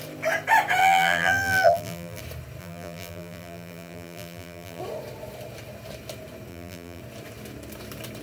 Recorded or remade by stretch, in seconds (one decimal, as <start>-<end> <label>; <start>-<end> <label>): 0.0-0.8 recorded; 0.8-2.2 remade; 2.2-2.6 recorded; 2.6-4.8 remade; 4.8-6.5 recorded; 6.5-7.0 remade; 7.0-8.2 recorded